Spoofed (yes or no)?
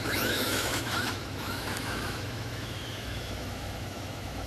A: yes